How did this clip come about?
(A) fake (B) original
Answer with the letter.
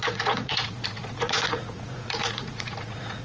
A